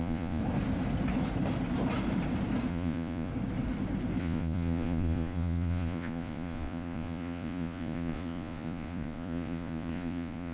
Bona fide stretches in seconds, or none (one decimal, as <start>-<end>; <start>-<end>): 0.4-2.7; 3.3-4.2